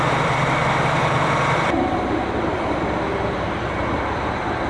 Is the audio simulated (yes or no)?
yes